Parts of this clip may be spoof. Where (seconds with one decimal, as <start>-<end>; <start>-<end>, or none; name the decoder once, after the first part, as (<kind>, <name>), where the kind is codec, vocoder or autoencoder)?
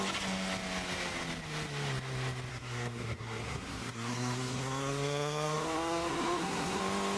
2.5-6.8 (codec, SNAC)